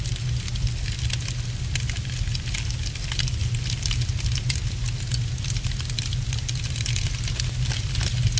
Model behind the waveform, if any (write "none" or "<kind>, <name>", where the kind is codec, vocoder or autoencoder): none